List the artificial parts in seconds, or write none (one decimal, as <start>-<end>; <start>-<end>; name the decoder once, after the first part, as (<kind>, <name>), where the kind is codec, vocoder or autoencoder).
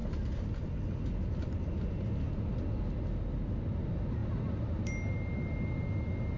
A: none